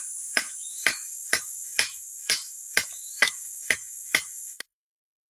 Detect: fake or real fake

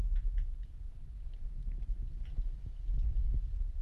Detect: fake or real real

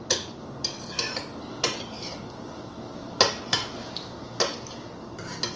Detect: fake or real real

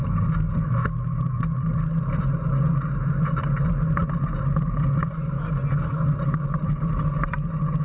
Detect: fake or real real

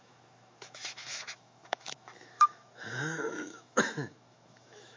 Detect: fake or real fake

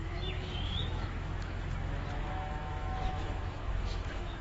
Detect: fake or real fake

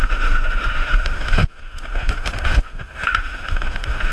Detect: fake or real fake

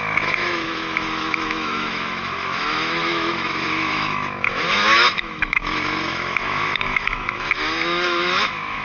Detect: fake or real fake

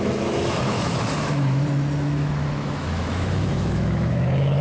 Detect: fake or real fake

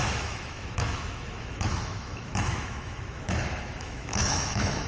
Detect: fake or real fake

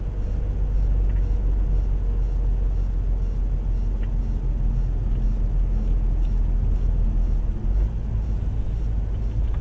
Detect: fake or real real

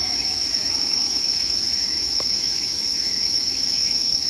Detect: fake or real fake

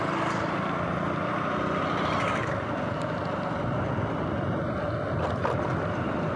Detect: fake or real real